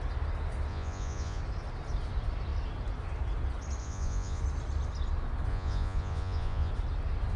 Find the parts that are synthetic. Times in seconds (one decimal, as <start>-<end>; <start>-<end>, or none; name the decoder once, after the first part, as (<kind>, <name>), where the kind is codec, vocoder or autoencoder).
0.7-1.4 (vocoder, Vocos); 3.8-4.4; 5.5-6.7